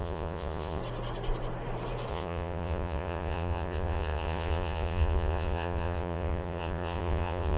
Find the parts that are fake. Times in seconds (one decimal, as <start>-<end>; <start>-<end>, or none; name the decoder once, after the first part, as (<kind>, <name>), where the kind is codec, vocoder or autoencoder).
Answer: 0.0-0.8 (vocoder, Vocos); 2.1-7.6